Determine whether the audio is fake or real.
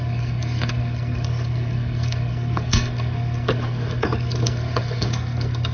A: fake